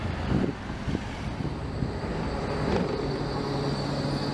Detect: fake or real real